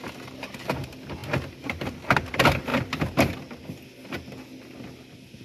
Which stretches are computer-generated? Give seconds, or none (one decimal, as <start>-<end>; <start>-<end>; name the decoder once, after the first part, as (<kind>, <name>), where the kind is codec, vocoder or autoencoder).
none